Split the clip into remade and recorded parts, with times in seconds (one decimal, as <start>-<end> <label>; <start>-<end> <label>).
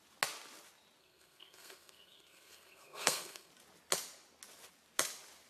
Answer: 0.0-1.0 recorded; 1.0-3.5 remade; 3.5-5.5 recorded